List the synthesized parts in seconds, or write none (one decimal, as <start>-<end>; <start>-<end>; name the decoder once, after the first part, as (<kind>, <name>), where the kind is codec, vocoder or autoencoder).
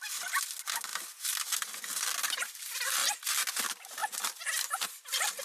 0.9-2.6 (vocoder, BigVGAN v2); 4.0-5.4